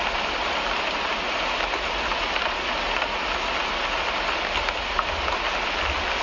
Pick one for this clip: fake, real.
real